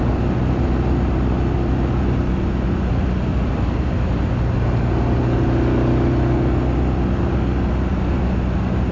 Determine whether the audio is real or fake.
real